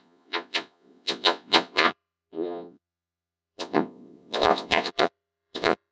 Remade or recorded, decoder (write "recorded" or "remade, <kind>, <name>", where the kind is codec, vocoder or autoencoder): remade, vocoder, Vocos